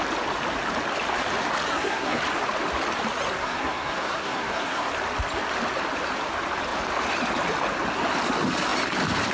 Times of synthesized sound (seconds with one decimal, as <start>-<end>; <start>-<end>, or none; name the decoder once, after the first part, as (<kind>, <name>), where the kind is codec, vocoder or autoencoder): 1.7-2.2 (codec, SNAC); 3.4-4.9